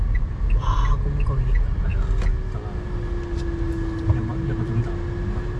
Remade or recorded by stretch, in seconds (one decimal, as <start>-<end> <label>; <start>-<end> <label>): 0.0-4.3 recorded; 4.3-4.9 remade; 4.9-5.6 recorded